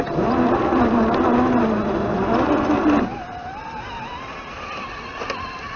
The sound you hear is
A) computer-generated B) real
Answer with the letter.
B